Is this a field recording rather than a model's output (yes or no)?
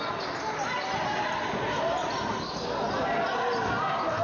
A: yes